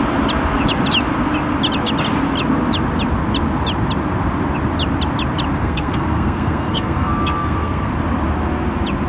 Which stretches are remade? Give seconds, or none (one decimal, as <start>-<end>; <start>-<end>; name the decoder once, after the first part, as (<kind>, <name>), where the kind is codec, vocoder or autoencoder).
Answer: 5.6-7.9 (codec, SNAC)